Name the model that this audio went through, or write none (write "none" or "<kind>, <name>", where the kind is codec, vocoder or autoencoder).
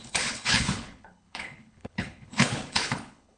codec, HILCodec